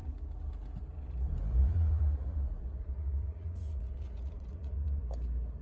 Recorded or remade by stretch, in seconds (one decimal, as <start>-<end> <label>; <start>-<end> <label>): 0.0-1.6 recorded; 1.6-5.0 remade; 5.0-5.6 recorded